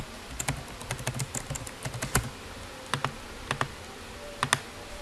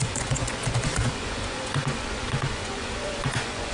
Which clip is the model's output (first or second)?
second